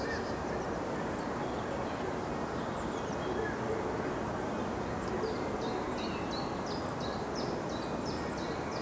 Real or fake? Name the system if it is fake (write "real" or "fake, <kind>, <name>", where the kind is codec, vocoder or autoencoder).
real